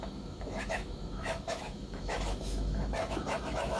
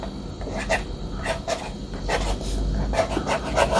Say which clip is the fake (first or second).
first